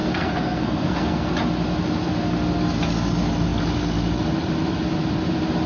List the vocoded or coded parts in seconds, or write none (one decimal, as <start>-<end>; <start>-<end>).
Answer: 0.0-1.3

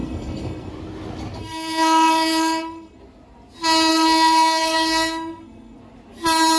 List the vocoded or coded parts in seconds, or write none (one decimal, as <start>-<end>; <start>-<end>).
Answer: 0.0-0.7; 1.4-3.0; 3.9-5.8